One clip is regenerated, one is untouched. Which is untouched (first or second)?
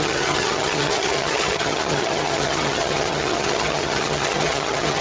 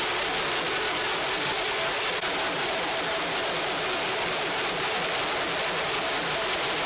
second